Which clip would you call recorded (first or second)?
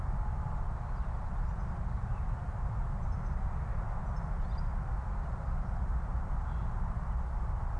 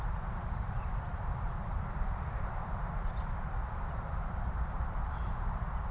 first